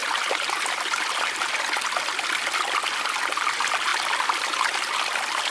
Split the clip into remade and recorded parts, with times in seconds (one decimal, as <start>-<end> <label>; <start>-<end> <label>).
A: 0.0-1.5 remade; 1.5-3.9 recorded; 3.9-5.5 remade